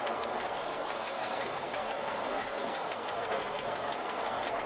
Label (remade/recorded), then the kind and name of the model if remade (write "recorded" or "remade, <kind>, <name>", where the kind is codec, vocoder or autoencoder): remade, codec, SNAC